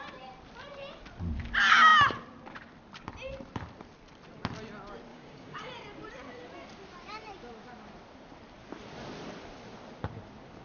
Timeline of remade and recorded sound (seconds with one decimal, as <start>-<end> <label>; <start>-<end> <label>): 0.0-5.1 recorded; 5.1-5.7 remade; 5.7-10.6 recorded